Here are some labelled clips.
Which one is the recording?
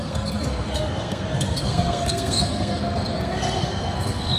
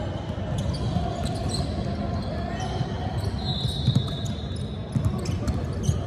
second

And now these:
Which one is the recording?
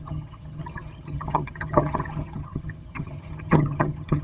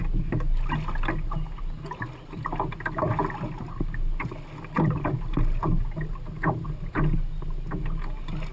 second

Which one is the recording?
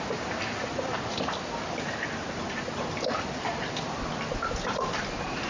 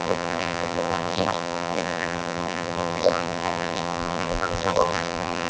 first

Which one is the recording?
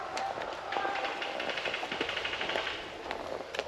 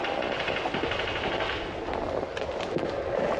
second